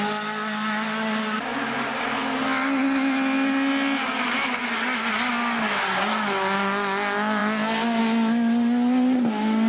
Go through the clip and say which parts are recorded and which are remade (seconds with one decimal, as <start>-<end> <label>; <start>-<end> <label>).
0.0-9.7 recorded